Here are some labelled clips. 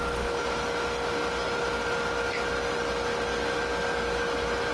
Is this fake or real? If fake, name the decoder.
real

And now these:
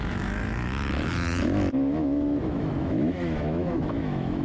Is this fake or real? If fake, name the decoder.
fake, autoencoder, DAC-VAE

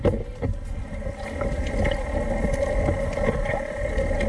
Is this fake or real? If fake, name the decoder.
real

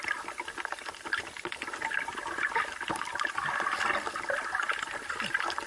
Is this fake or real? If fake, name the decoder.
real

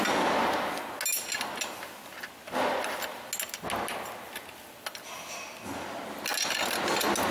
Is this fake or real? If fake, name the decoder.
real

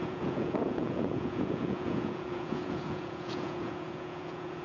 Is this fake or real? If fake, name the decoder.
fake, vocoder, Vocos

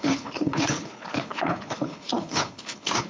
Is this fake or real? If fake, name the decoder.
fake, codec, HILCodec